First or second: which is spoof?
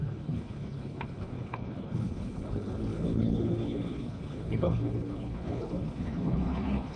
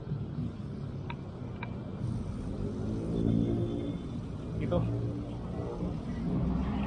first